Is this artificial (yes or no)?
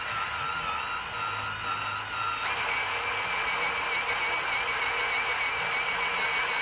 no